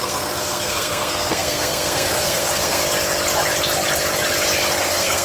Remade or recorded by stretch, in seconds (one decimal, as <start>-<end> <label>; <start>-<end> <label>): 0.0-2.8 remade; 2.8-4.8 recorded; 4.8-5.2 remade